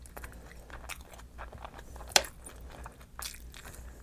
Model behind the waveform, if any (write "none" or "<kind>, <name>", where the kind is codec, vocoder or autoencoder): none